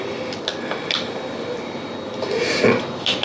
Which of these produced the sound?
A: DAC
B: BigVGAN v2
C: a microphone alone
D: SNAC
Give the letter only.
C